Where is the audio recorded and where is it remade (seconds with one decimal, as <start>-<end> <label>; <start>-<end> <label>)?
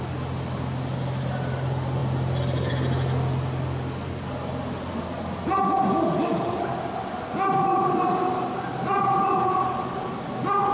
0.0-10.7 recorded